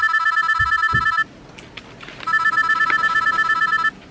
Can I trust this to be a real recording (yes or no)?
yes